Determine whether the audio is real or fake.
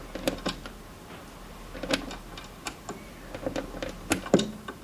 real